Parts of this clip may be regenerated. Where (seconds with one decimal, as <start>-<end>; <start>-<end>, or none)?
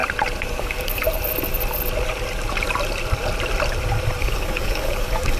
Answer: 0.6-1.0; 4.2-5.4